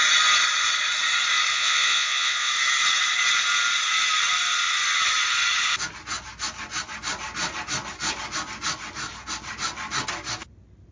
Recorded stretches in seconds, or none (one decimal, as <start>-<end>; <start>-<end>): 0.0-1.5; 2.5-10.9